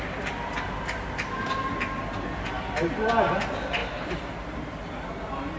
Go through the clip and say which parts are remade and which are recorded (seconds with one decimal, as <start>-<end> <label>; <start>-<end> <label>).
0.0-5.6 recorded